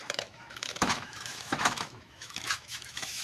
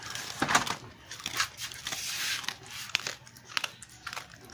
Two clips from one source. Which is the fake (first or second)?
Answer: first